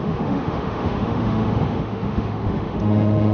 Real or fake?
fake